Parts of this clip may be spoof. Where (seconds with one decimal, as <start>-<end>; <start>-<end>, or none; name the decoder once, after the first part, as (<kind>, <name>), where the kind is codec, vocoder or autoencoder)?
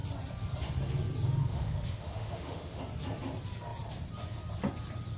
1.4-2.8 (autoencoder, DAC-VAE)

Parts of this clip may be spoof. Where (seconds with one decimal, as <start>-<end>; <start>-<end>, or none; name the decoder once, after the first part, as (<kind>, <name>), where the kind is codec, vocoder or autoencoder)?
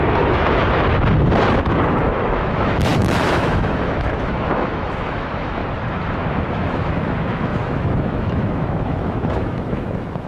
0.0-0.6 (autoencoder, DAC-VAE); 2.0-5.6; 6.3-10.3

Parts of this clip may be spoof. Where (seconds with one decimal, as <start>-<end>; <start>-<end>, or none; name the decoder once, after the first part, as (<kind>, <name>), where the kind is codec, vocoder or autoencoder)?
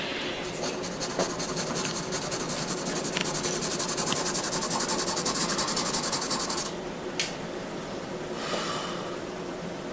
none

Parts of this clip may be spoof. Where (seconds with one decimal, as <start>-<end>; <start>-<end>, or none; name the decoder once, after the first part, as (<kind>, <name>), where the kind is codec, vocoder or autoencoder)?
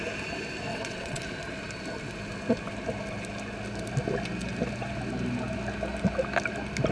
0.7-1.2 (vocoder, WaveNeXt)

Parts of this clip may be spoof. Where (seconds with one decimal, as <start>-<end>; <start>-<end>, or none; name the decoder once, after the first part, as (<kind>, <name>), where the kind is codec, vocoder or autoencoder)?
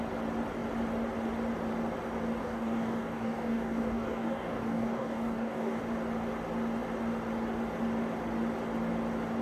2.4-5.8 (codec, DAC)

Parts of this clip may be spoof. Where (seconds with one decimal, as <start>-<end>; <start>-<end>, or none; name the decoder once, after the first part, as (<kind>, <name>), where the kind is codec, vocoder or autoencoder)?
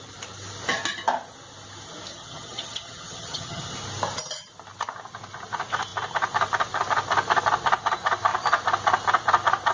2.1-3.7 (vocoder, HiFi-GAN)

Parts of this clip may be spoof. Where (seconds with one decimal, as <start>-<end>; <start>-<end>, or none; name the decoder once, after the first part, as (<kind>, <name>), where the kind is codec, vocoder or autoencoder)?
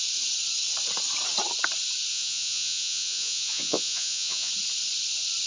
2.1-4.5 (vocoder, Vocos)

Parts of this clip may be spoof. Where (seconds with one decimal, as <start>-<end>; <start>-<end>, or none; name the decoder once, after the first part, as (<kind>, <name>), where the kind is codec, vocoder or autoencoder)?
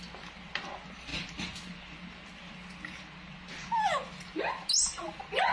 none